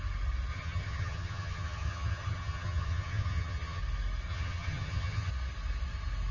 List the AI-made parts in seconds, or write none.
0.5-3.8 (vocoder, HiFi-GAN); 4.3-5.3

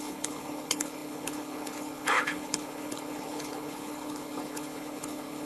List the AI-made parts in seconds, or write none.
0.0-5.4 (codec, HILCodec)

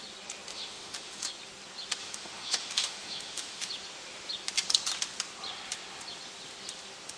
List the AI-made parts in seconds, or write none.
0.5-1.3 (autoencoder, DAC-VAE); 2.0-3.7

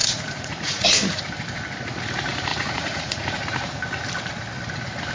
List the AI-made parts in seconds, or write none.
0.0-1.2 (vocoder, Vocos); 2.5-3.4